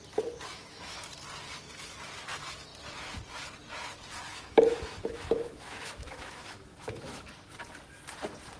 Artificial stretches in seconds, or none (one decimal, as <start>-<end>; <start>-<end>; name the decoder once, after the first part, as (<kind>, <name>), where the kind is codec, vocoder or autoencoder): 0.5-1.0 (autoencoder, DAC-VAE); 4.3-7.2